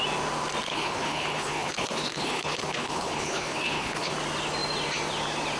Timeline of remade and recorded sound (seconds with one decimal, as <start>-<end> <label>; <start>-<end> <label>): 0.0-0.7 recorded; 0.7-4.1 remade; 4.1-5.6 recorded